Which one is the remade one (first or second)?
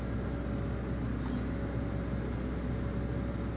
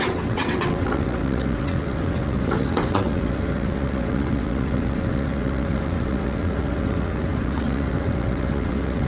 second